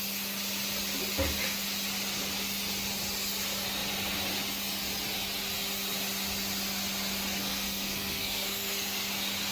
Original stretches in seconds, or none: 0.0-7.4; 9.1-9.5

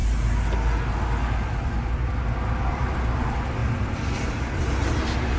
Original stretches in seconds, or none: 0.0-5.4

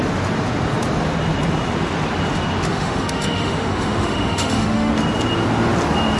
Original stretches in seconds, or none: 0.0-2.7; 4.9-6.2

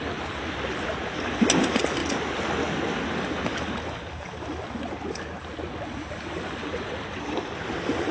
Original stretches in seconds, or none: 0.0-8.1

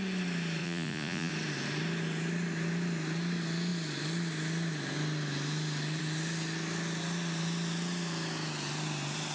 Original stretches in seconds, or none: 0.0-0.6; 1.3-9.3